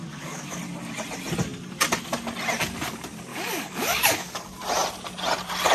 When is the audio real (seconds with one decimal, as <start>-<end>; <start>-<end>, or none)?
0.6-3.3; 4.5-5.7